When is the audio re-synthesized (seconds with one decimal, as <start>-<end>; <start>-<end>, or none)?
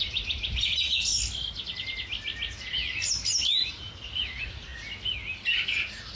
0.0-1.1; 3.7-4.7; 5.8-6.2